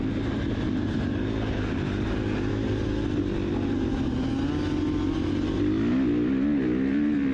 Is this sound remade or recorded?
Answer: recorded